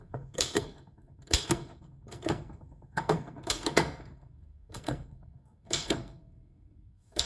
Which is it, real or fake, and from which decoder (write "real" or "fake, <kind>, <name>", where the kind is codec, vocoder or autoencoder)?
fake, codec, SNAC